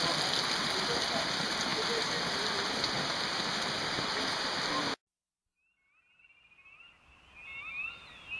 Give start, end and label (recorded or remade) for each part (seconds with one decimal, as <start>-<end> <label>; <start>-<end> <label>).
0.0-8.4 recorded